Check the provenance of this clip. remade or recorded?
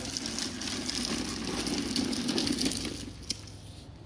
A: recorded